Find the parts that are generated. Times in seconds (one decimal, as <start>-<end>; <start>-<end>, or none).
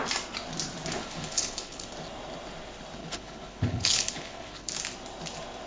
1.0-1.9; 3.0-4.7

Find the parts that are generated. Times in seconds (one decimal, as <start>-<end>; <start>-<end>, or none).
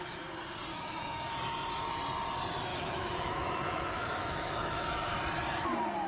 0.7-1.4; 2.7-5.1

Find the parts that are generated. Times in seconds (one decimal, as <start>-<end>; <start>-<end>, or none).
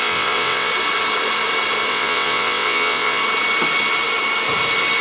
0.0-0.7; 1.9-3.2